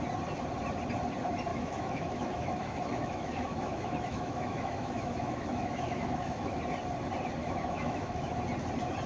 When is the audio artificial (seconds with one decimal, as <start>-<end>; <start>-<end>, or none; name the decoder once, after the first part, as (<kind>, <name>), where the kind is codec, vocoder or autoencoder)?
1.5-6.6 (autoencoder, DAC-VAE); 7.4-8.3